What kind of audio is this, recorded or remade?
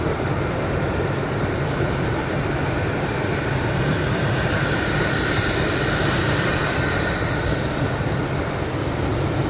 recorded